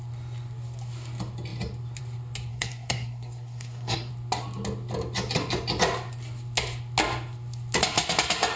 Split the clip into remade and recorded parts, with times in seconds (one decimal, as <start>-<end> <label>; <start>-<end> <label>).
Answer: 0.0-2.5 recorded; 2.5-4.1 remade; 4.1-8.6 recorded